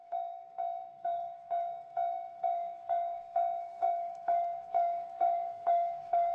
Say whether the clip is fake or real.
fake